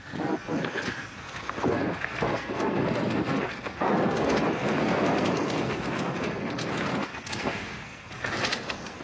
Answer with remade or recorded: remade